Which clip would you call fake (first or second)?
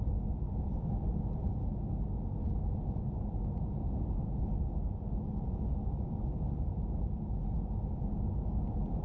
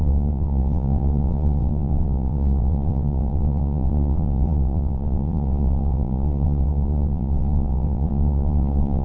second